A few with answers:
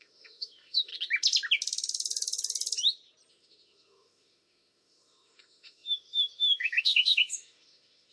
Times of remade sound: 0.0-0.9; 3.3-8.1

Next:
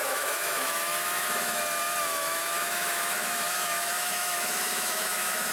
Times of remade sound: 0.0-1.6; 2.1-5.5

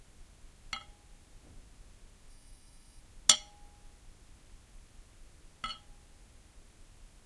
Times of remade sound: 2.3-3.0

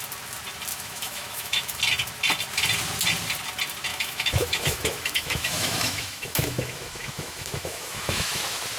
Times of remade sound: 0.7-1.8; 3.9-8.4

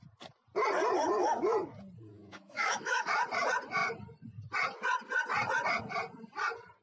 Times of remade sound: 2.1-3.1